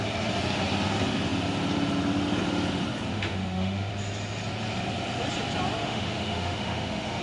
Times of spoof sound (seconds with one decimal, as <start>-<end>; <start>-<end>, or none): 3.1-3.9; 5.8-7.2